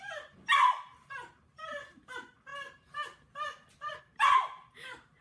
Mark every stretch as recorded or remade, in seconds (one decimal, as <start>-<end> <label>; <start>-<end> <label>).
0.0-2.5 remade; 2.5-4.0 recorded; 4.0-5.2 remade